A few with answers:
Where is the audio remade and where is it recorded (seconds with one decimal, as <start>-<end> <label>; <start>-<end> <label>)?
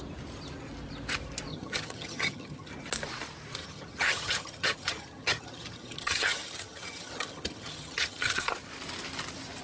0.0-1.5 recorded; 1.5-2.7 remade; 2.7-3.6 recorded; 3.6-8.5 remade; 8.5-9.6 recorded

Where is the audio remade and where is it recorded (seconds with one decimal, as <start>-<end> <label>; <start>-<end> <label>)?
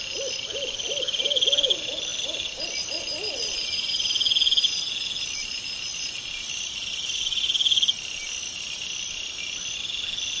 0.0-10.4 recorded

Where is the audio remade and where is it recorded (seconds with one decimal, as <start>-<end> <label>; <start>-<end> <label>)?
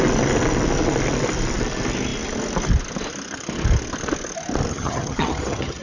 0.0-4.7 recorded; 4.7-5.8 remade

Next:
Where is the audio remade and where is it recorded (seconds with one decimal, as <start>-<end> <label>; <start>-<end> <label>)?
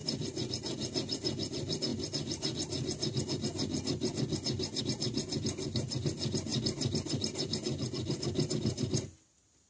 0.0-9.7 recorded